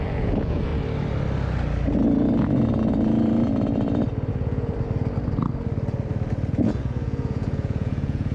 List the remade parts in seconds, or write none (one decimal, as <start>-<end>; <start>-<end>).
0.0-0.7; 4.3-4.7; 6.5-8.3